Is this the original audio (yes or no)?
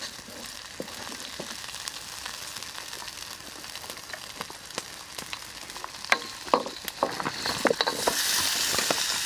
yes